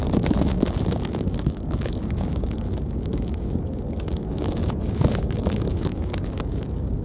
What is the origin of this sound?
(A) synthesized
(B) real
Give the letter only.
A